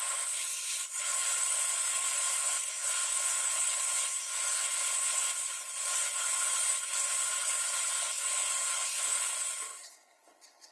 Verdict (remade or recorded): remade